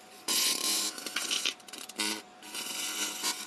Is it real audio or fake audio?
fake